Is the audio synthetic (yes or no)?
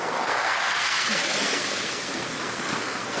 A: yes